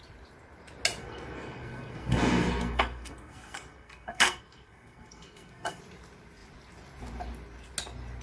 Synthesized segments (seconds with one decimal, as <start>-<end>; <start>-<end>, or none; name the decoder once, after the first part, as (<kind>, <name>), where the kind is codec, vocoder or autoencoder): 1.0-5.8 (codec, SNAC)